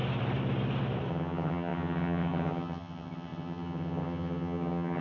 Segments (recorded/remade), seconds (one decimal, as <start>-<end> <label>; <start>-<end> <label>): 0.0-1.1 recorded; 1.1-5.0 remade